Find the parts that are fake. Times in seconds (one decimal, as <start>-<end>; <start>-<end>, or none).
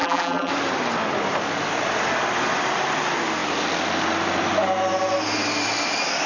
0.0-0.5